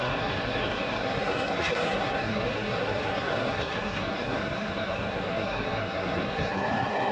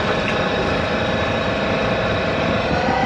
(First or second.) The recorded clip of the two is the second